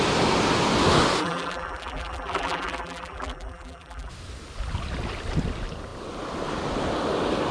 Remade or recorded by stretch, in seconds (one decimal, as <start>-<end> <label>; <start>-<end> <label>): 0.0-1.2 recorded; 1.2-4.1 remade; 4.1-7.5 recorded